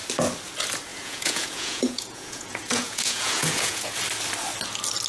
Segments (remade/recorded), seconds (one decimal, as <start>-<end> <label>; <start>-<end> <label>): 0.0-0.9 recorded; 0.9-4.0 remade; 4.0-5.1 recorded